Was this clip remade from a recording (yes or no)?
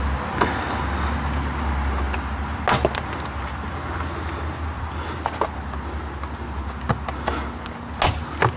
no